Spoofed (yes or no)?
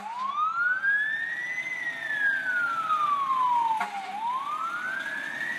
no